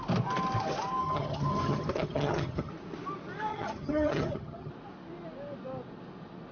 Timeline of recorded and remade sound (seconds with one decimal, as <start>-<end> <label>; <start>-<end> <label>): 0.0-1.0 recorded; 1.0-2.7 remade; 2.7-3.5 recorded; 3.5-4.7 remade; 4.7-6.5 recorded